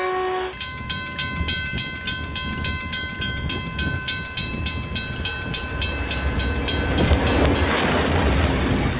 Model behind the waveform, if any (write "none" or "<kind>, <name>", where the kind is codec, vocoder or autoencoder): none